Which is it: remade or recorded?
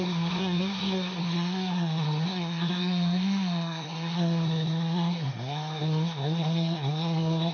remade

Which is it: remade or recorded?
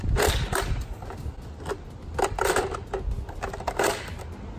recorded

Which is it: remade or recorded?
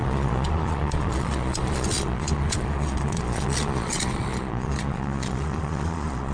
remade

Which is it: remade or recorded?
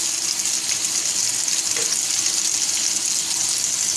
recorded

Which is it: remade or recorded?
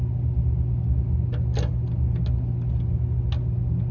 recorded